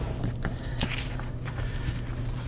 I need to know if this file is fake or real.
real